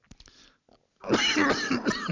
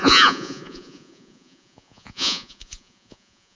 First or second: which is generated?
second